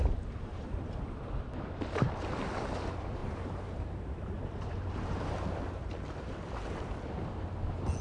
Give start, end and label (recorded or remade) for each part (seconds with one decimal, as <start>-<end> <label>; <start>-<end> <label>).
0.0-0.5 recorded; 0.5-1.2 remade; 1.2-3.2 recorded; 3.2-5.2 remade; 5.2-8.0 recorded